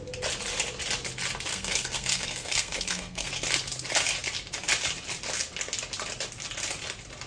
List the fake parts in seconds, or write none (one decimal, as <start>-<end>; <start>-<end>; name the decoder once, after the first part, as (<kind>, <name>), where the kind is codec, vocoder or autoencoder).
1.5-3.3 (codec, SNAC)